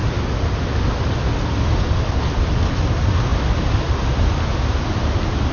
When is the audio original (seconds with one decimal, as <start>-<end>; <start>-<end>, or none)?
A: 0.0-5.5